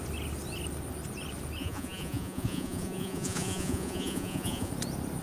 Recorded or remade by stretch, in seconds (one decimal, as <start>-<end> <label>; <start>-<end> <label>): 0.0-1.6 recorded; 1.6-4.7 remade; 4.7-5.2 recorded